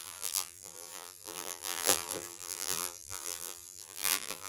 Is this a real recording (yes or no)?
no